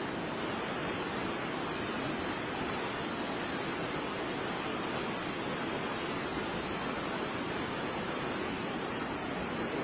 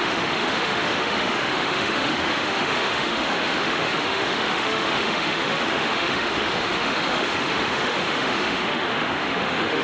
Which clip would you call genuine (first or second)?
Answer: first